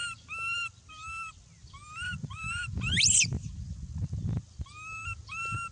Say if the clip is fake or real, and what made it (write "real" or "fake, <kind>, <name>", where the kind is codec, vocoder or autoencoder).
real